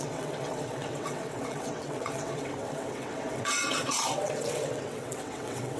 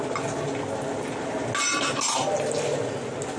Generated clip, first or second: first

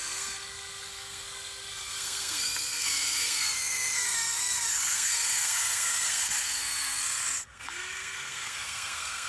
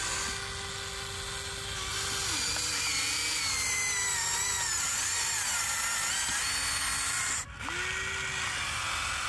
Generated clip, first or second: first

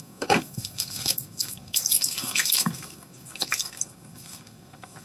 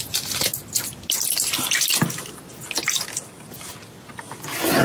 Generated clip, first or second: first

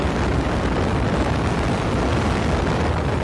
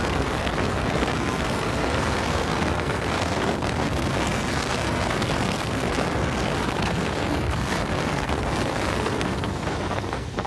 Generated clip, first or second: second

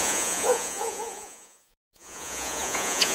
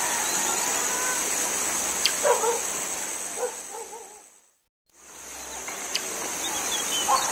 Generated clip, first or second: first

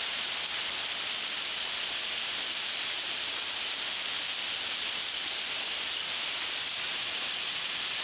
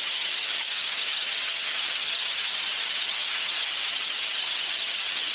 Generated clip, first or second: second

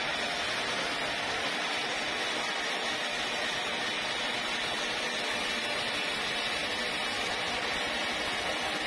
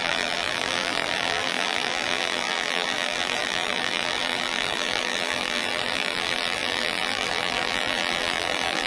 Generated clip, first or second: second